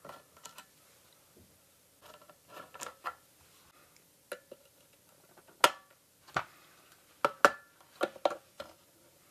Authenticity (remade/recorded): recorded